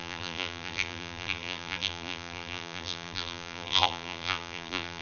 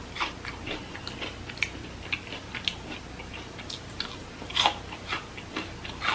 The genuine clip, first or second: second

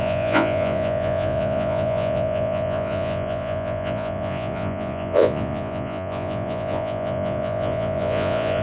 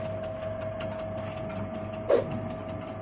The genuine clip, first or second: second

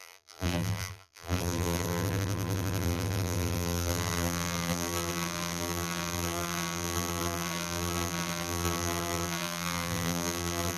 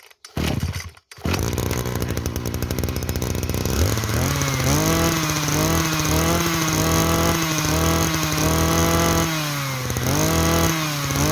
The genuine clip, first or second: second